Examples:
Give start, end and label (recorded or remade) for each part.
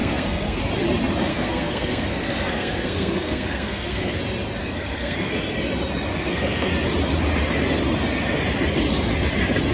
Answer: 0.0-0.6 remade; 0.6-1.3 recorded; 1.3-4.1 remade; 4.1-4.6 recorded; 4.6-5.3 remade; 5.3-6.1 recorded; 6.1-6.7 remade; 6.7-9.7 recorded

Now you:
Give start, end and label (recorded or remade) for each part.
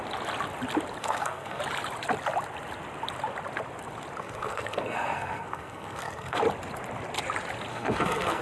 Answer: 0.0-1.0 recorded; 1.0-1.6 remade; 1.6-4.2 recorded; 4.2-6.4 remade; 6.4-7.7 recorded; 7.7-8.4 remade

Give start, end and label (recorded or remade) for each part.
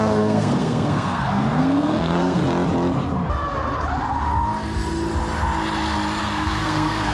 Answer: 0.0-2.4 remade; 2.4-6.2 recorded; 6.2-7.1 remade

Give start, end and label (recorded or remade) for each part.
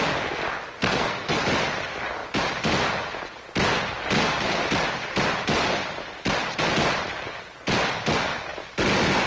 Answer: 0.0-0.8 recorded; 0.8-1.3 remade; 1.3-9.3 recorded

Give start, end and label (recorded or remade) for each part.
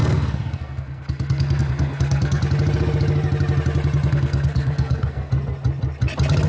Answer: 0.0-2.4 remade; 2.4-4.1 recorded; 4.1-5.3 remade; 5.3-6.5 recorded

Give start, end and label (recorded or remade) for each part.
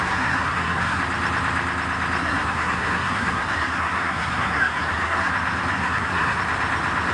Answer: 0.0-1.0 remade; 1.0-2.2 recorded; 2.2-5.3 remade; 5.3-5.7 recorded; 5.7-6.4 remade; 6.4-7.1 recorded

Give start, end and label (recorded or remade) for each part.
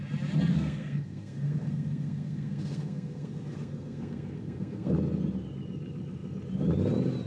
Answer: 0.0-0.5 recorded; 0.5-4.9 remade; 4.9-7.3 recorded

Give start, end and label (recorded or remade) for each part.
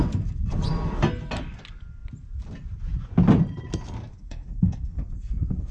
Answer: 0.0-4.1 recorded; 4.1-5.7 remade